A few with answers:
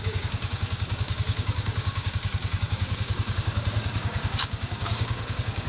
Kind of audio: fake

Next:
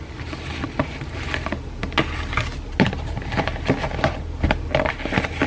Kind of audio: real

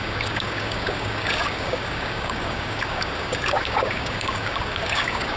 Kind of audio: fake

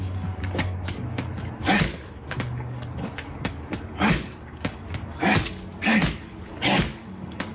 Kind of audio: fake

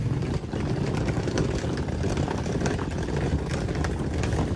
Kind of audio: real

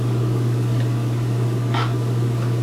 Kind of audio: fake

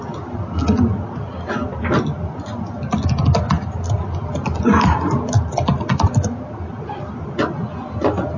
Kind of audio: real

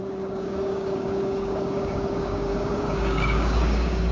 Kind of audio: fake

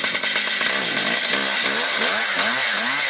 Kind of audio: real